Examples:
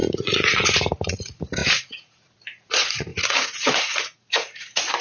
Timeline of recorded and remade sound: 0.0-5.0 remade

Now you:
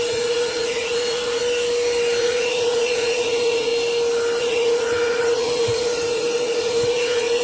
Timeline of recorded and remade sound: 0.0-1.4 remade; 1.4-2.2 recorded; 2.2-3.7 remade; 3.7-4.4 recorded; 4.4-7.4 remade

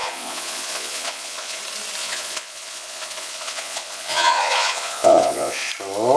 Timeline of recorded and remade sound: 0.0-1.6 remade; 1.6-2.0 recorded; 2.0-5.7 remade; 5.7-6.2 recorded

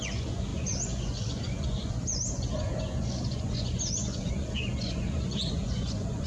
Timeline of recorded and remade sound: 0.0-6.3 remade

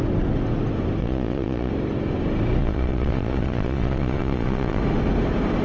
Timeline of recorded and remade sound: 0.0-1.0 recorded; 1.0-1.7 remade; 1.7-2.6 recorded; 2.6-4.8 remade; 4.8-5.6 recorded

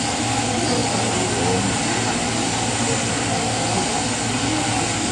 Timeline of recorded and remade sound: 0.0-5.1 recorded

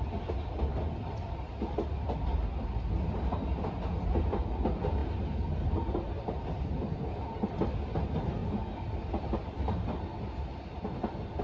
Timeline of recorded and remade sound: 0.0-11.4 recorded

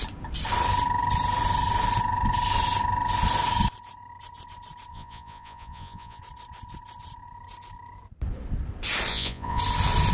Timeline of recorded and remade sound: 0.0-4.9 recorded; 4.9-6.2 remade; 6.2-9.1 recorded; 9.1-9.6 remade; 9.6-10.1 recorded